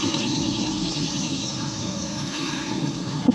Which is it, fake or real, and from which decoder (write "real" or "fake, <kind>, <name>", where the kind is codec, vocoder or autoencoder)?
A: fake, codec, SNAC